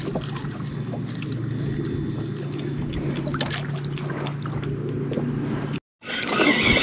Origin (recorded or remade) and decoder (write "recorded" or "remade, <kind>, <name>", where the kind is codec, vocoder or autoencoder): recorded